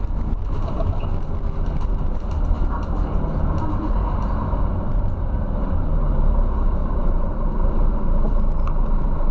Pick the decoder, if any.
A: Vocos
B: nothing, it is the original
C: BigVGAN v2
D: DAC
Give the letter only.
C